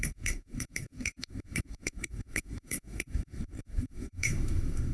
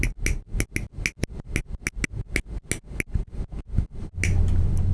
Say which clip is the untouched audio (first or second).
second